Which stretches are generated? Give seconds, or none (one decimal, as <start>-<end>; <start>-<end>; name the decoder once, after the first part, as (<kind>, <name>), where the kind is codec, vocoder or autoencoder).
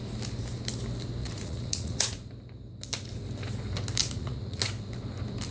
1.2-2.3 (vocoder, Vocos); 4.0-4.6